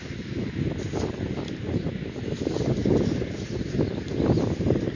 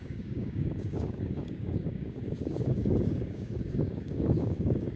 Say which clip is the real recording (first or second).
first